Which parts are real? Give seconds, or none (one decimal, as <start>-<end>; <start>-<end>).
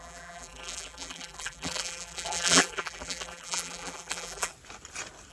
4.5-5.3